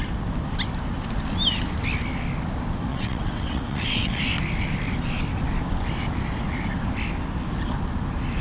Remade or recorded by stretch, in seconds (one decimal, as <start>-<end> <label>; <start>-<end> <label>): 0.0-2.9 recorded; 2.9-4.2 remade; 4.2-8.4 recorded